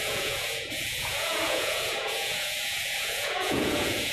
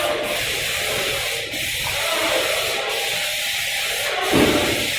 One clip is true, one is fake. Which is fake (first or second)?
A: first